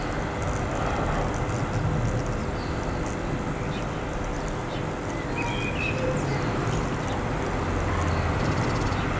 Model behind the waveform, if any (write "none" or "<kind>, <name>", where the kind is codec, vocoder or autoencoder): none